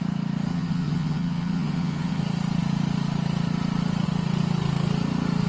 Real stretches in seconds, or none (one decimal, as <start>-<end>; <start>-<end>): 0.0-0.5; 2.2-5.5